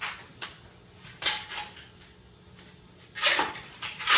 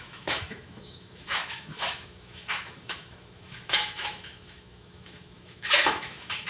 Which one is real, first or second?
first